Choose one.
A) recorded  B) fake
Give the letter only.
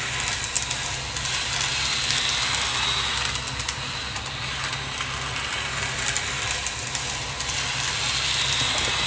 A